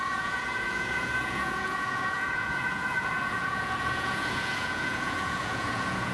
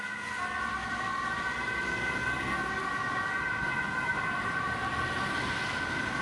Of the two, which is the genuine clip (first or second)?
second